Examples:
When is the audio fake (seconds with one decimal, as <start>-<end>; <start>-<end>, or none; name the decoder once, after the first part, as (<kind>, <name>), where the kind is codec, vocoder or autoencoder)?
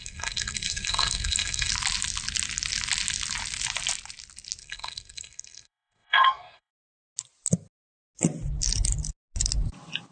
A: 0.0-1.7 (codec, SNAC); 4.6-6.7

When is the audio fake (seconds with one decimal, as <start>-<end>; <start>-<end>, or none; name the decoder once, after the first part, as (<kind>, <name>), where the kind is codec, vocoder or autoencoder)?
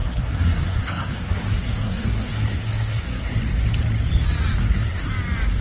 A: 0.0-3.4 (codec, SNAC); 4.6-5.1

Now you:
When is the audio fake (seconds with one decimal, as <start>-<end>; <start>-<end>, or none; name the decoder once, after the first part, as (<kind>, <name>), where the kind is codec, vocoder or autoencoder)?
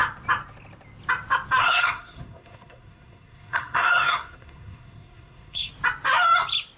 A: 1.6-5.7 (codec, SNAC)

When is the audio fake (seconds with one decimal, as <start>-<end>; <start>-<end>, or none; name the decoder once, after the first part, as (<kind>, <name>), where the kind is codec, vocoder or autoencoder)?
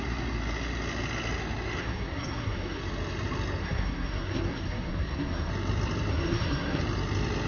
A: 1.8-2.8 (codec, SNAC); 3.6-5.5; 6.1-6.8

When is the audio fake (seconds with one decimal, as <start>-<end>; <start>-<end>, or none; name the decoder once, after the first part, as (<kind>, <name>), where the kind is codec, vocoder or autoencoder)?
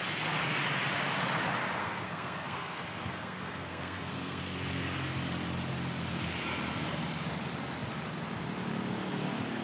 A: 1.8-4.4 (codec, SNAC)